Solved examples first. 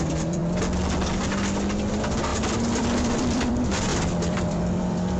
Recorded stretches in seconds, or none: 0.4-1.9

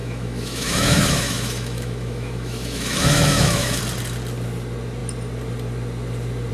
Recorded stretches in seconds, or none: 3.8-6.5